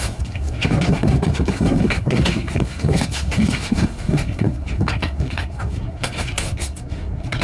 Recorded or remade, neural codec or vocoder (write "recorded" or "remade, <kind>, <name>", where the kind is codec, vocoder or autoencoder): remade, codec, SNAC